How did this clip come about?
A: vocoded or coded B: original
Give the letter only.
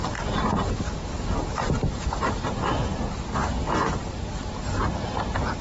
B